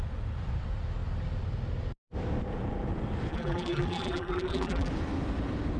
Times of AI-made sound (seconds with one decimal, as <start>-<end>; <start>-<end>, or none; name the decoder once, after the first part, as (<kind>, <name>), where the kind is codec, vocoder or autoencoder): 3.3-4.9 (vocoder, BigVGAN v2)